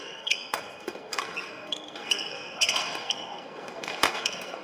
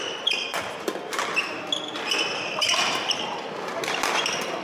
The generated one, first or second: first